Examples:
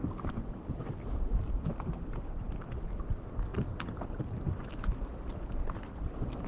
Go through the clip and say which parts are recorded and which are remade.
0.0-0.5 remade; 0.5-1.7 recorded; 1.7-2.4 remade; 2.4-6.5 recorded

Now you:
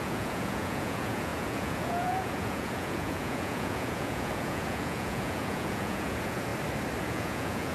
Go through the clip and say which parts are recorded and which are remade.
0.0-6.5 remade; 6.5-7.0 recorded; 7.0-7.7 remade

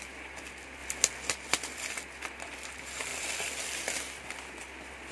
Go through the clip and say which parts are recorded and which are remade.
0.0-5.1 recorded

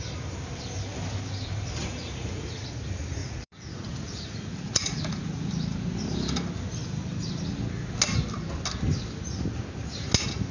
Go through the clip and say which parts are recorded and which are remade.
0.0-1.8 recorded; 1.8-2.8 remade; 2.8-3.2 recorded; 3.2-5.5 remade; 5.5-10.5 recorded

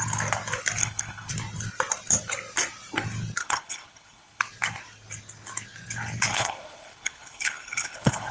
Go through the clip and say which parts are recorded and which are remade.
0.0-0.8 recorded; 0.8-1.3 remade; 1.3-3.4 recorded; 3.4-4.4 remade; 4.4-6.3 recorded; 6.3-8.3 remade

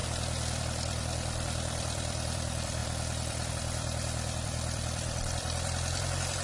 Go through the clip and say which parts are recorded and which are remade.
0.0-0.6 recorded; 0.6-6.4 remade

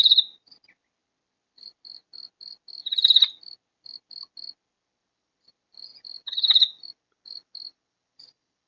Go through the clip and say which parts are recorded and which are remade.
0.0-8.7 recorded